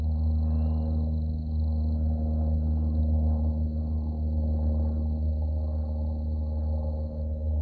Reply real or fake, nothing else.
real